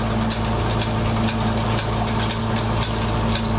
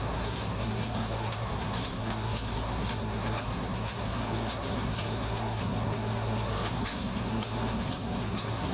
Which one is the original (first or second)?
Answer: first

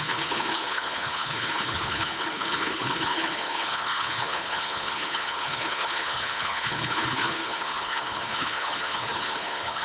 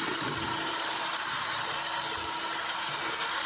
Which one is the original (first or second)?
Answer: second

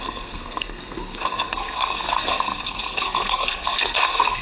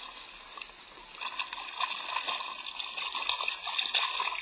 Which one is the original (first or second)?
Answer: second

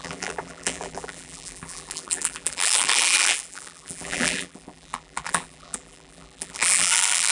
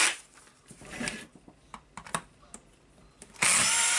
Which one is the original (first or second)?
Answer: second